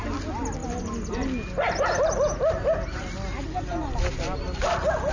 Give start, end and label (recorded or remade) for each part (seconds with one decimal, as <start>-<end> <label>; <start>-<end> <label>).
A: 0.0-5.1 recorded